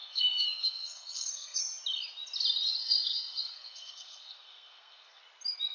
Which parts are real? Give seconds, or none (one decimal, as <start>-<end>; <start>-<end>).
1.6-2.8; 5.2-5.7